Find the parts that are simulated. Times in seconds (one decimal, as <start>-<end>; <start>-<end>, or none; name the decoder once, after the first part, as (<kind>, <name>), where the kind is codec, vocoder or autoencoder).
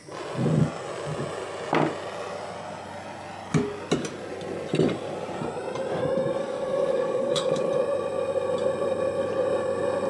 6.4-7.7 (codec, DAC)